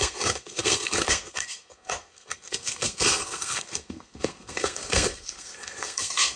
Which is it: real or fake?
fake